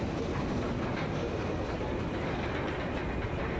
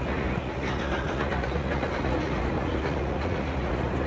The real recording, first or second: first